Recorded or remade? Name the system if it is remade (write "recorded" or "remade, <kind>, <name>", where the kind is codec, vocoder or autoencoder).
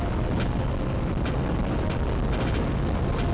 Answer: recorded